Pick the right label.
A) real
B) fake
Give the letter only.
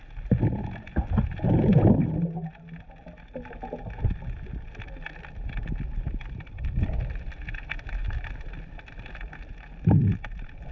A